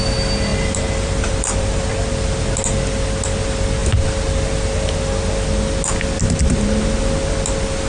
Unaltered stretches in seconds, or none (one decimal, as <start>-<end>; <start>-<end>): 0.0-0.5; 2.3-7.9